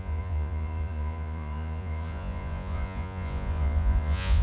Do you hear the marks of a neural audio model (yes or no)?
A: yes